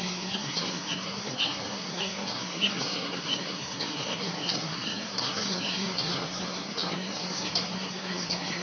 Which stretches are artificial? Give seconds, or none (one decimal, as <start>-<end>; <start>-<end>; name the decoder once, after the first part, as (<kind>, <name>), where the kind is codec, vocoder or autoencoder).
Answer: 0.0-8.6 (codec, SNAC)